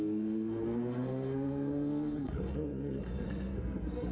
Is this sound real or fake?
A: fake